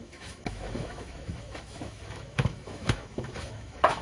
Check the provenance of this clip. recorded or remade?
remade